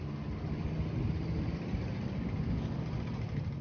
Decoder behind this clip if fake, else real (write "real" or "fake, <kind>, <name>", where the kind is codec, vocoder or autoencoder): real